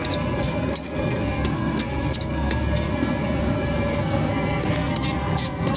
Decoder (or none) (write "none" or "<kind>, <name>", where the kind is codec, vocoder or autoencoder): codec, SNAC